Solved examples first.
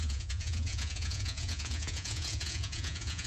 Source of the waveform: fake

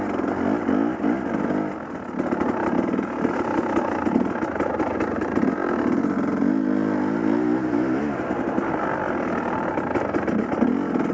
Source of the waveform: real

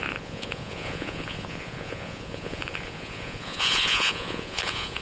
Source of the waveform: fake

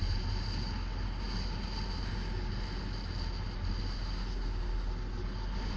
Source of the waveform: real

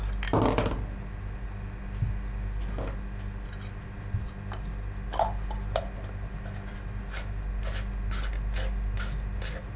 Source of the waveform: real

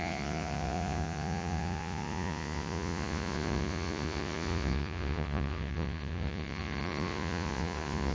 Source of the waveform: fake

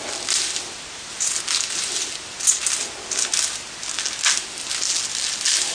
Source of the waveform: real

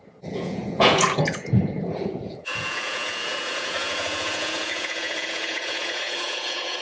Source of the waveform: fake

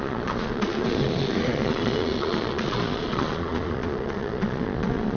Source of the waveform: fake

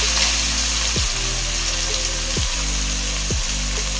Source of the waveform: real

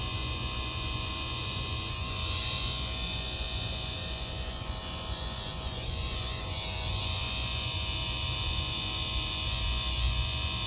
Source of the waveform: fake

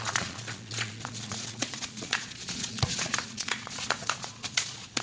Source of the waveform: fake